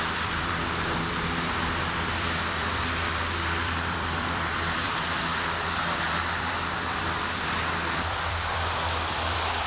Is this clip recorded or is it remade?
remade